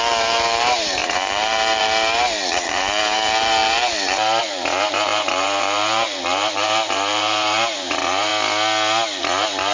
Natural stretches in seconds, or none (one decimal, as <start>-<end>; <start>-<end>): 8.3-9.2